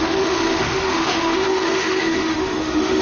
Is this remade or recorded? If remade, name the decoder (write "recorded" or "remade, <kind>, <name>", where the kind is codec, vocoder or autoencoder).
remade, autoencoder, DAC-VAE